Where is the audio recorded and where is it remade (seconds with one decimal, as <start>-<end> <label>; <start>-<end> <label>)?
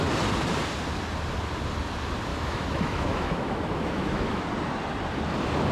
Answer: 0.0-2.3 recorded; 2.3-4.4 remade; 4.4-5.7 recorded